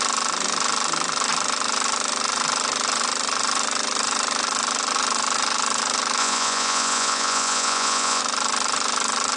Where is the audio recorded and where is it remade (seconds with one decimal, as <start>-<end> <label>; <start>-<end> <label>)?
0.0-6.2 recorded; 6.2-8.2 remade; 8.2-9.4 recorded